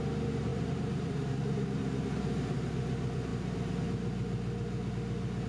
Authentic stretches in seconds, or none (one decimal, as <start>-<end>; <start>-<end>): 0.0-0.5; 2.7-5.5